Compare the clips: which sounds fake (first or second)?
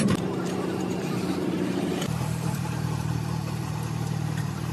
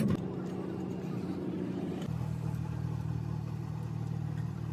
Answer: first